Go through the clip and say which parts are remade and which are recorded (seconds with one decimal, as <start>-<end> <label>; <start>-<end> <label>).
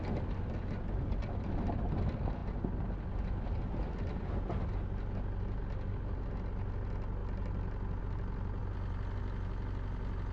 0.0-10.3 recorded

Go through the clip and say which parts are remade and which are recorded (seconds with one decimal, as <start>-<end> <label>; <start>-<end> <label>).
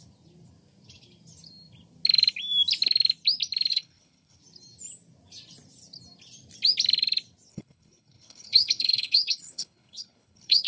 0.0-3.7 recorded; 3.7-4.4 remade; 4.4-7.5 recorded; 7.5-10.7 remade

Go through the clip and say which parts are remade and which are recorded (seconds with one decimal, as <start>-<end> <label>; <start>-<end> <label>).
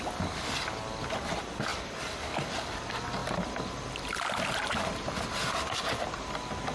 0.0-6.7 recorded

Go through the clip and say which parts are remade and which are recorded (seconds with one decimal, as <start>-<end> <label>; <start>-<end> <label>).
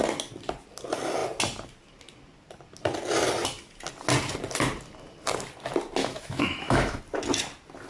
0.0-6.0 recorded; 6.0-7.0 remade; 7.0-7.9 recorded